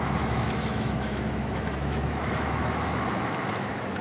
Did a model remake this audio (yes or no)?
yes